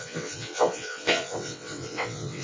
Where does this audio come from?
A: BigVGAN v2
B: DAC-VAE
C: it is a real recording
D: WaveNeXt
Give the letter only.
D